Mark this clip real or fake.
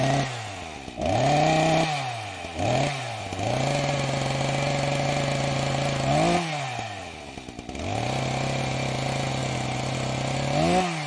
real